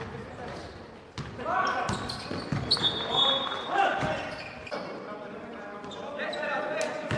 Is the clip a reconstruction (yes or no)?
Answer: no